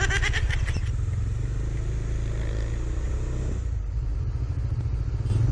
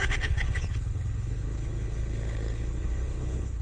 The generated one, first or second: second